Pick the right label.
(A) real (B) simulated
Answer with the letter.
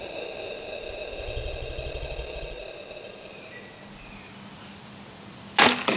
A